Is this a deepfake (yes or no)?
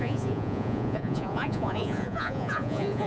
yes